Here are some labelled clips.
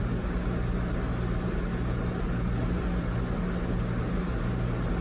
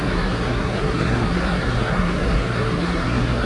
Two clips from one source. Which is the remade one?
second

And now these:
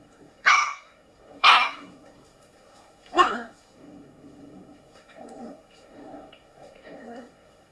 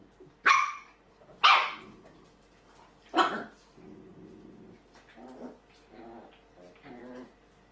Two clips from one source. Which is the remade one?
first